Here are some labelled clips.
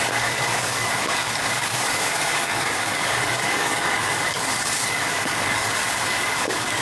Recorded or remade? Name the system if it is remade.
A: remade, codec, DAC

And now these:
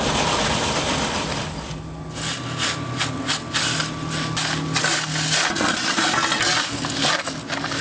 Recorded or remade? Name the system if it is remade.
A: recorded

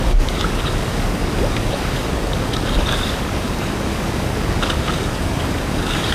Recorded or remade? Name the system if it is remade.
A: remade, codec, DAC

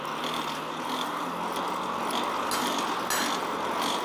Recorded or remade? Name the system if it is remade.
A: recorded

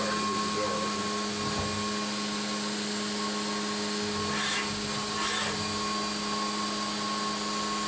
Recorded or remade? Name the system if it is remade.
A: recorded